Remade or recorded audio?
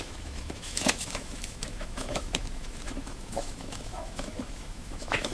remade